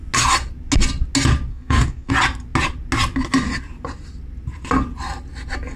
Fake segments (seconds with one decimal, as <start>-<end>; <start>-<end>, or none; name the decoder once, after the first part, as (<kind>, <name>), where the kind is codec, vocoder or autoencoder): 1.5-2.1 (codec, DAC)